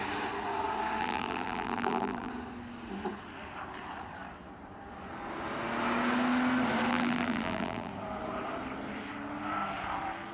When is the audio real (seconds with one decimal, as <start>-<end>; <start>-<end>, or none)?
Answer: 0.0-1.0; 2.3-6.9; 7.9-10.3